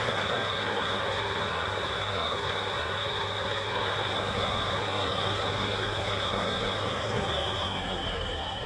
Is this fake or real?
fake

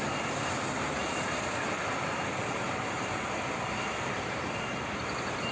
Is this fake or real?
fake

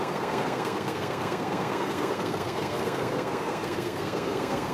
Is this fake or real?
fake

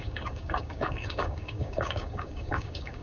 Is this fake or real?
fake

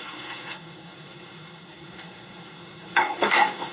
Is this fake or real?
fake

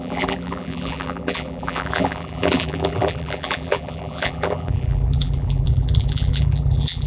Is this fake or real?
fake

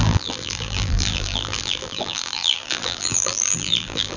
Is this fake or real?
fake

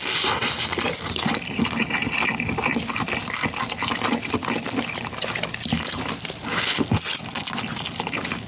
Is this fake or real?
real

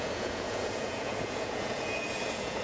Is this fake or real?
fake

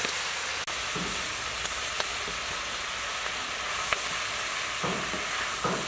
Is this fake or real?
real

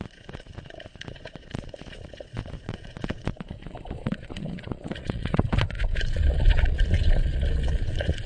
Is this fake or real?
fake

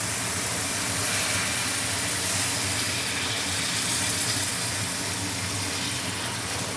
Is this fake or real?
real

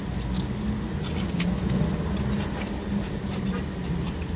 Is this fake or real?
real